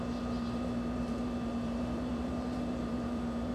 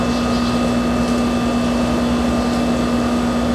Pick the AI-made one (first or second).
first